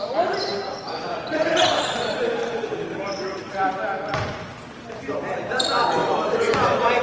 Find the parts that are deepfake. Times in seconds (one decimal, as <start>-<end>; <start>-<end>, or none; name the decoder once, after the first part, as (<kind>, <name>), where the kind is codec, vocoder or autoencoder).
none